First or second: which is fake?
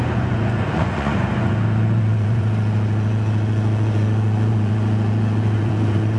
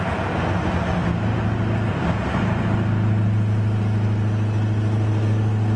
first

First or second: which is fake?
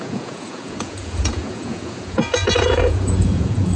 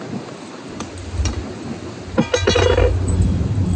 first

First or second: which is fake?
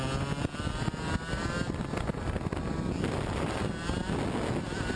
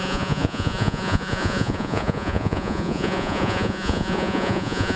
second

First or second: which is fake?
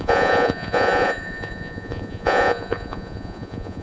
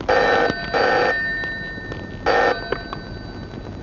first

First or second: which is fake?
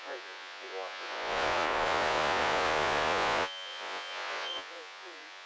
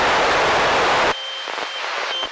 first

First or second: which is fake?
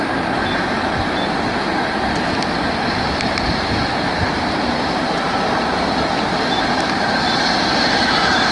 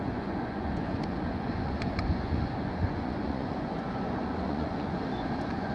second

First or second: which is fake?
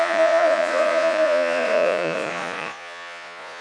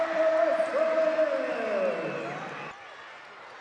first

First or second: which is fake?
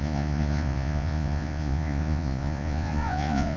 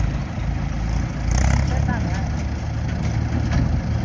first